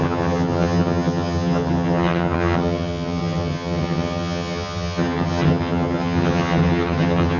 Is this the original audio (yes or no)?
no